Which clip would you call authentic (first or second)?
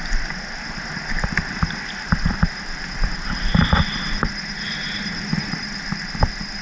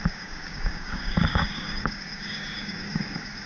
first